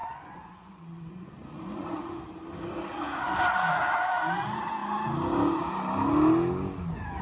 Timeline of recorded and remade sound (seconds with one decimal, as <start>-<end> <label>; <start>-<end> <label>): 0.0-2.2 remade; 2.2-7.2 recorded